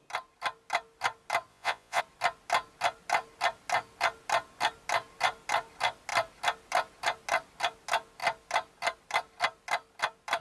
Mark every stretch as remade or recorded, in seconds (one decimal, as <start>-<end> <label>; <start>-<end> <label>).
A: 0.0-1.5 recorded; 1.5-2.0 remade; 2.0-10.4 recorded